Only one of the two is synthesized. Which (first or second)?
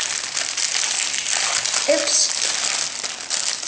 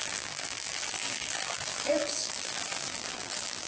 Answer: second